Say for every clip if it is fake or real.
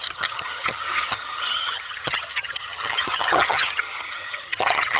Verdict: fake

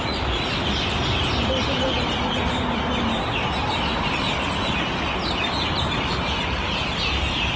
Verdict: real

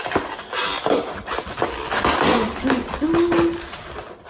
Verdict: real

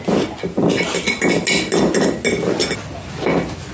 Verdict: real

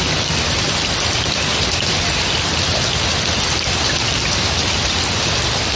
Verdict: real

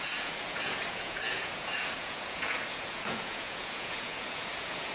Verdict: fake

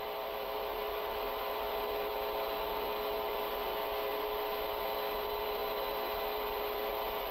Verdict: real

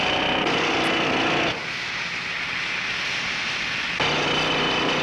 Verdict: real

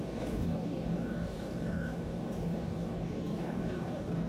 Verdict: fake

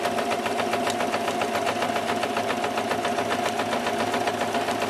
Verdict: real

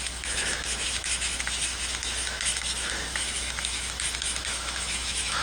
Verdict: fake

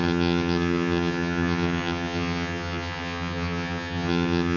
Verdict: fake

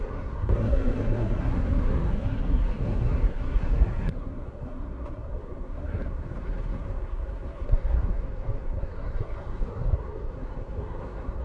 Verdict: fake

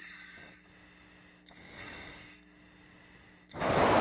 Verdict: real